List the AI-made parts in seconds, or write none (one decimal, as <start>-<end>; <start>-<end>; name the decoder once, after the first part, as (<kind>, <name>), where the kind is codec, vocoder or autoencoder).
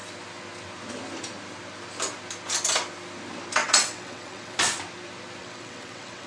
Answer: 3.6-4.6 (vocoder, WaveNeXt); 5.4-6.3